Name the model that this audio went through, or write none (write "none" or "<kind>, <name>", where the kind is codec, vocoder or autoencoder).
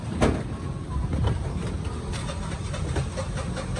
none